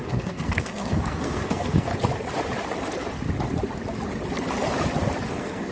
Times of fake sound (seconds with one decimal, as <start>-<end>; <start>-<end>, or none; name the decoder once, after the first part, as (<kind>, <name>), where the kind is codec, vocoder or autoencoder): 0.0-1.9 (codec, SNAC); 5.3-5.7